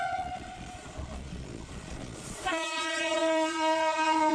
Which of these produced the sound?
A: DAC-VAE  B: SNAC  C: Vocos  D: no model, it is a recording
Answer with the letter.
C